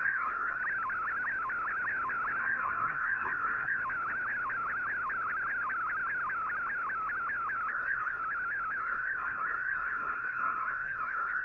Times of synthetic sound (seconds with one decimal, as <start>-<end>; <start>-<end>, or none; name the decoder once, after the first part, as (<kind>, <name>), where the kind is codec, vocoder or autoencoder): 0.0-0.6 (codec, SNAC); 2.4-3.8; 7.7-8.2; 8.8-11.4